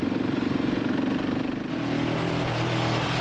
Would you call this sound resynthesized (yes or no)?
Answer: no